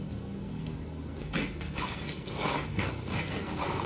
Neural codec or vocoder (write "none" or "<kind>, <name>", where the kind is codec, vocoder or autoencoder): codec, SNAC